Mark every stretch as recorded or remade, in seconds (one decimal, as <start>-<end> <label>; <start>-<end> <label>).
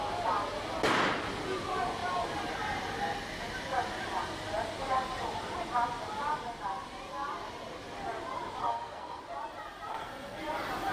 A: 0.0-8.6 recorded; 8.6-9.2 remade; 9.2-9.9 recorded; 9.9-10.4 remade; 10.4-10.9 recorded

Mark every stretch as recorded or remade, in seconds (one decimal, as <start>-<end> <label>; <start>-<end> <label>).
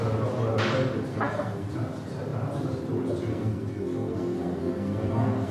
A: 0.0-1.1 recorded; 1.1-1.7 remade; 1.7-3.3 recorded; 3.3-5.5 remade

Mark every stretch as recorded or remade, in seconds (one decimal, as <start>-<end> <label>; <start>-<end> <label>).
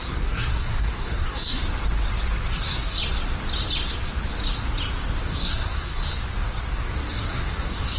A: 0.0-1.6 remade; 1.6-2.5 recorded; 2.5-3.0 remade; 3.0-5.3 recorded; 5.3-6.0 remade; 6.0-7.1 recorded; 7.1-8.0 remade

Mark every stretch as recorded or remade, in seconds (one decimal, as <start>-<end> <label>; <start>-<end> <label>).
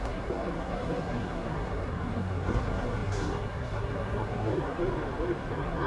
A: 0.0-4.8 remade; 4.8-5.5 recorded; 5.5-5.9 remade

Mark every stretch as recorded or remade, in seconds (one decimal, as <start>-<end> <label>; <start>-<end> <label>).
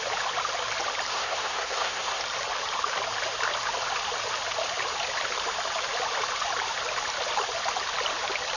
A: 0.0-1.1 recorded; 1.1-2.2 remade; 2.2-8.6 recorded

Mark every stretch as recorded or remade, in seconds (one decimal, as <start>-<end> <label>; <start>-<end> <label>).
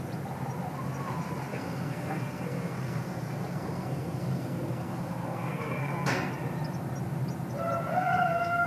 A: 0.0-1.5 recorded; 1.5-6.3 remade; 6.3-7.9 recorded; 7.9-8.7 remade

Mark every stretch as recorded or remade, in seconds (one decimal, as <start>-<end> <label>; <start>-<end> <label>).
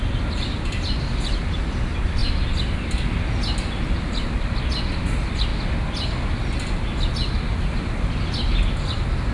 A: 0.0-9.3 recorded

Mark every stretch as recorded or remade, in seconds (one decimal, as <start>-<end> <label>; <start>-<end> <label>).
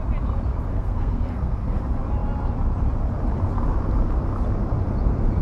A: 0.0-0.7 recorded; 0.7-1.8 remade; 1.8-5.4 recorded